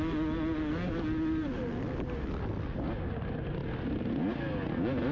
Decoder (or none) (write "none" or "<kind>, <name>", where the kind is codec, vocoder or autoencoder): none